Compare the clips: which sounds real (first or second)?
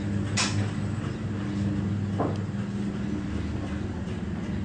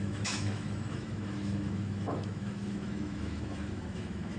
first